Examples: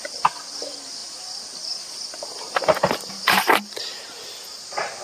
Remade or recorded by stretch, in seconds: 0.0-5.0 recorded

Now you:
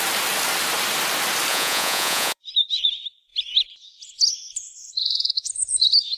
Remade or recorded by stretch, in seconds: 0.0-1.5 recorded; 1.5-2.4 remade; 2.4-5.0 recorded; 5.0-5.5 remade; 5.5-6.2 recorded

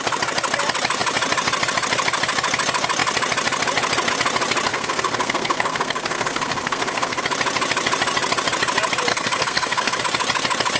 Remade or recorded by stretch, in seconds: 0.0-4.7 recorded; 4.7-7.2 remade; 7.2-9.1 recorded; 9.1-10.0 remade; 10.0-10.8 recorded

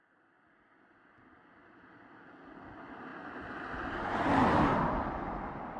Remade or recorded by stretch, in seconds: 0.0-5.8 recorded

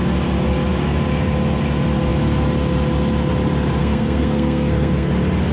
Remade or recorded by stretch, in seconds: 0.0-3.8 recorded; 3.8-5.1 remade; 5.1-5.5 recorded